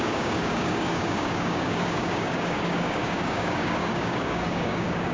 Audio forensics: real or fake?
fake